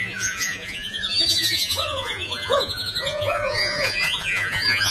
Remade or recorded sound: remade